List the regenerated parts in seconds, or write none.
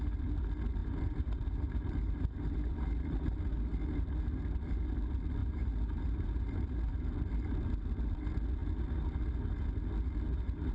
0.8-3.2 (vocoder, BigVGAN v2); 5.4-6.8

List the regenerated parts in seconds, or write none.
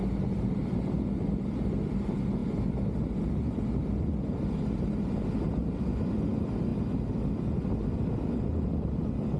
none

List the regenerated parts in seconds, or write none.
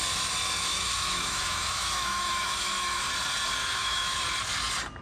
0.7-3.1 (autoencoder, DAC-VAE); 3.6-4.2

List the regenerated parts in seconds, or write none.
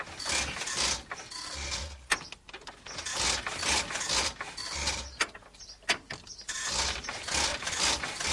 7.5-8.3 (vocoder, BigVGAN v2)